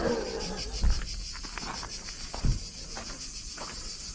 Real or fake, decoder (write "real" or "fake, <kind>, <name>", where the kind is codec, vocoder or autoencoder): real